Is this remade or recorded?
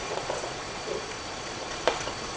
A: remade